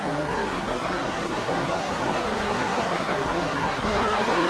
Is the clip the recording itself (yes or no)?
no